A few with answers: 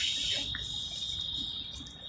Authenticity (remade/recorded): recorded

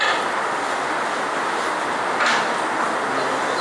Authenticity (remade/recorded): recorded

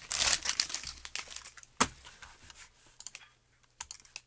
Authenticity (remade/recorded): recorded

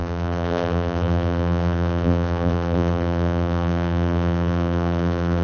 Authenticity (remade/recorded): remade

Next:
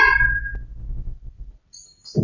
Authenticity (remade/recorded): recorded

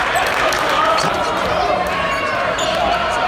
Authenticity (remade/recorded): remade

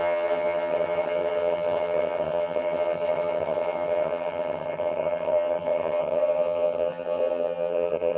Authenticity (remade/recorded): remade